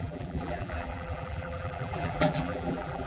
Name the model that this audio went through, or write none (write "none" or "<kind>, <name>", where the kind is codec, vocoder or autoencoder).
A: vocoder, BigVGAN v2